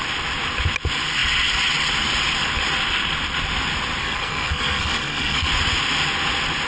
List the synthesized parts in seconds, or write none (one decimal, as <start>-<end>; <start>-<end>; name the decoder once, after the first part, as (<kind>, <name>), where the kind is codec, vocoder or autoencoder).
4.0-5.5 (codec, SNAC)